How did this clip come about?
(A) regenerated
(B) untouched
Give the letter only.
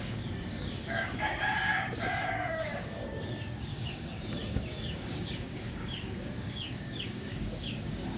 A